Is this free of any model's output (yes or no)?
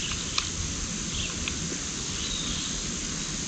yes